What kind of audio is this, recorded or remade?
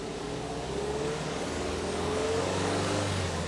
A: remade